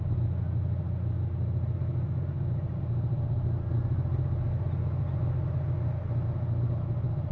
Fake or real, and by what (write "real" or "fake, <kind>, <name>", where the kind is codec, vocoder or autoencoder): real